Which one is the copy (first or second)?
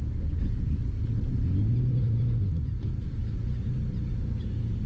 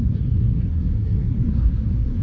second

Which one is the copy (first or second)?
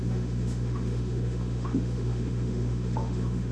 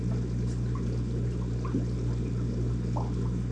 first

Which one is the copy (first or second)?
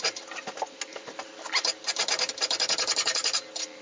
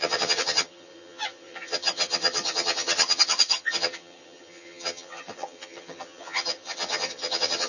second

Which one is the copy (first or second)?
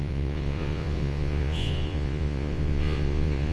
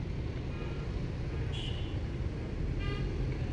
first